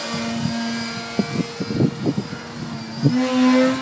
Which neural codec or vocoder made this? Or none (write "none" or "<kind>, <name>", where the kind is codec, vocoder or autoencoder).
none